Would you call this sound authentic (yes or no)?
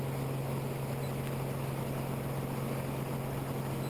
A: yes